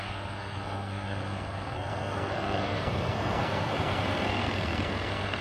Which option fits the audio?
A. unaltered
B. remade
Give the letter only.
B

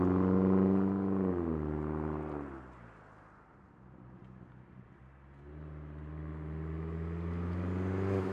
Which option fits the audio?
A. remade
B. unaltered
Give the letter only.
B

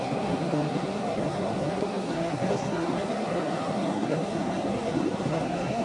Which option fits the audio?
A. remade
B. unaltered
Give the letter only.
A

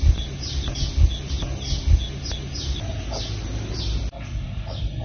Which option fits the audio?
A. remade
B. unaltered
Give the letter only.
B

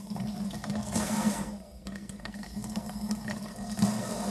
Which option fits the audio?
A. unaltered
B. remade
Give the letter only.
B